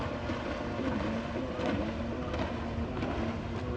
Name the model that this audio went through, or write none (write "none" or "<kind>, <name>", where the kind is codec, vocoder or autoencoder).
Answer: none